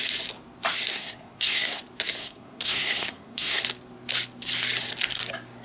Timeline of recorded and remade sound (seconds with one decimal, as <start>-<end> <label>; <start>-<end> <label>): 0.0-0.9 recorded; 0.9-1.8 remade; 1.8-2.2 recorded; 2.2-3.6 remade; 3.6-5.6 recorded